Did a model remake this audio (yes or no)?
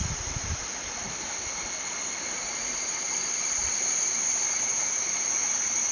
no